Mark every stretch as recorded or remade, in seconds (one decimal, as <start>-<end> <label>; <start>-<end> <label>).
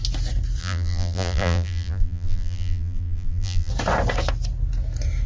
0.0-0.6 recorded; 0.6-3.7 remade; 3.7-5.3 recorded